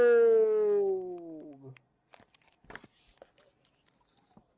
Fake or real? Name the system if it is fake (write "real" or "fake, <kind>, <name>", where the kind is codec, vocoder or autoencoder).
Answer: real